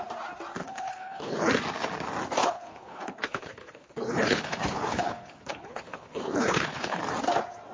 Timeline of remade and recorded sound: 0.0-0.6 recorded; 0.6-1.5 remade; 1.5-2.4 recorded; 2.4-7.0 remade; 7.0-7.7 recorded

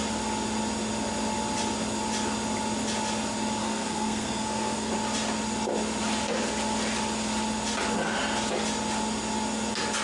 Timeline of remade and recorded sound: 0.0-3.6 recorded; 3.6-4.9 remade; 4.9-10.0 recorded